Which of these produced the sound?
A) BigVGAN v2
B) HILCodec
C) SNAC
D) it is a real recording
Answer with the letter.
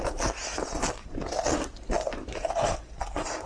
D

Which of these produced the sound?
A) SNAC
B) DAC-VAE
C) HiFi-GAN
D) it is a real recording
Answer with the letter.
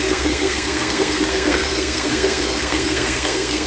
A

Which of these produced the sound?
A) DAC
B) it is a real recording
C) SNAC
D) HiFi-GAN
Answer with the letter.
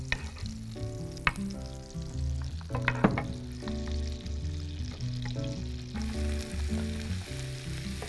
B